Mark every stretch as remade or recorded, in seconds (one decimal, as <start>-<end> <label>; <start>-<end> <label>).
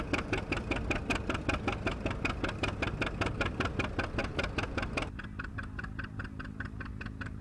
0.0-7.4 recorded